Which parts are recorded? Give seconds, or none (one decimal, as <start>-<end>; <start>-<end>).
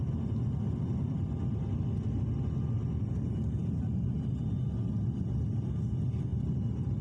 0.0-7.0